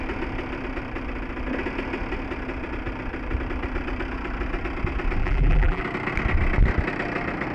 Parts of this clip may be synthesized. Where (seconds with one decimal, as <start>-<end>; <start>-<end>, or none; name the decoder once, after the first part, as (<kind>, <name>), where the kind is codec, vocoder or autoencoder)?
5.2-5.8 (vocoder, BigVGAN v2)